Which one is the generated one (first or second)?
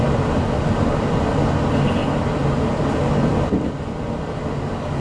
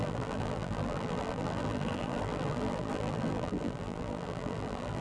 second